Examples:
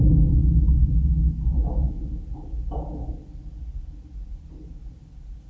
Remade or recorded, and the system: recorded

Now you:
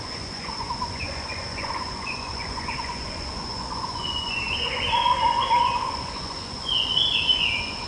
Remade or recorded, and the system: remade, vocoder, Vocos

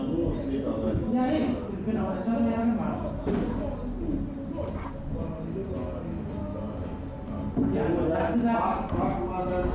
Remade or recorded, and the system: recorded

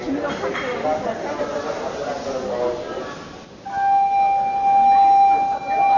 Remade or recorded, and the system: recorded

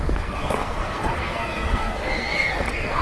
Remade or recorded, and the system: remade, codec, SNAC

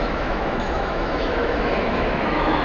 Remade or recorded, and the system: remade, autoencoder, DAC-VAE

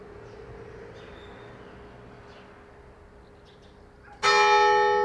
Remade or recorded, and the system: recorded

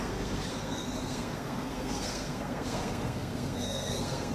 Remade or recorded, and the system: remade, codec, SNAC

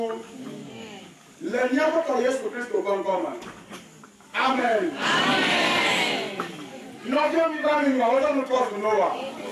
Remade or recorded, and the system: remade, codec, DAC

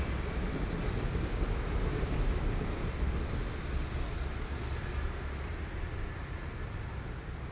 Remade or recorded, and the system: recorded